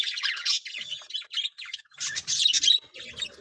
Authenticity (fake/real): real